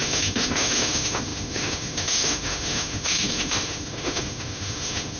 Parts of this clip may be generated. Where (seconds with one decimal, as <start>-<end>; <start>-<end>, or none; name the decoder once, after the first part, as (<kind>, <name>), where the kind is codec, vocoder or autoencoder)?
0.0-5.2 (autoencoder, DAC-VAE)